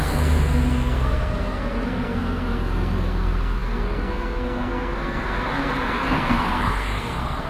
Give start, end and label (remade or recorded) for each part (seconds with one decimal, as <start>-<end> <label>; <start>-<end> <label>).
0.0-7.5 remade